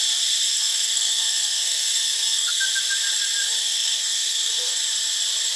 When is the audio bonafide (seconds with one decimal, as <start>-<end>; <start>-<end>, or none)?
0.0-0.5; 2.6-3.6; 4.8-5.6